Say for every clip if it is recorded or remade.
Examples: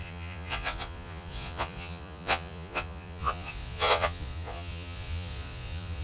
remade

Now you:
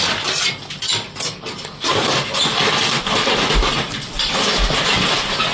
recorded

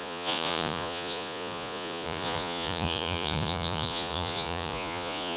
remade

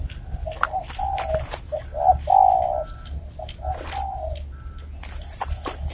recorded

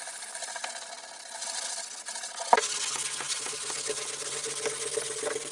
recorded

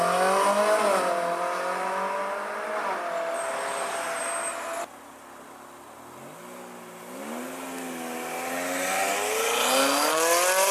recorded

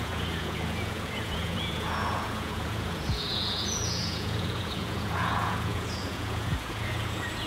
remade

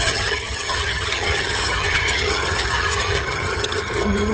remade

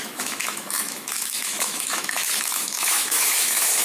remade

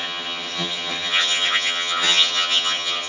remade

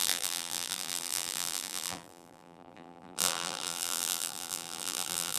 remade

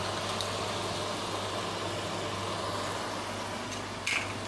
recorded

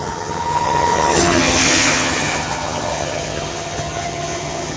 remade